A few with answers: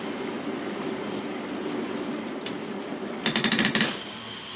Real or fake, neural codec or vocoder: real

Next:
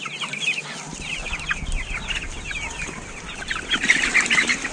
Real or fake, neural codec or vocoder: real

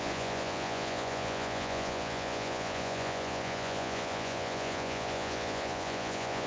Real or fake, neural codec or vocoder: fake, vocoder, Vocos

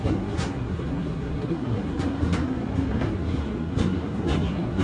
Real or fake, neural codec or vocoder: fake, codec, SNAC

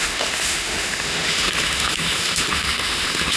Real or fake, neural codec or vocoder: fake, autoencoder, DAC-VAE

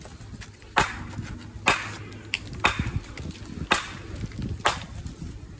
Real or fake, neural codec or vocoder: real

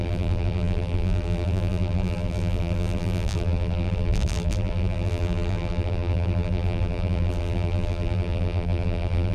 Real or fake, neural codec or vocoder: fake, vocoder, BigVGAN v2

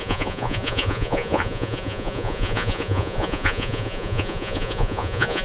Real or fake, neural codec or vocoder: fake, vocoder, Vocos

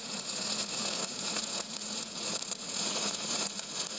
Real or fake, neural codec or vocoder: fake, vocoder, Vocos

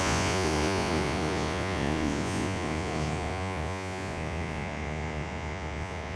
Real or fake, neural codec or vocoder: fake, vocoder, Vocos